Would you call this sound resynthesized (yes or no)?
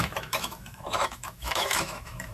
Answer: yes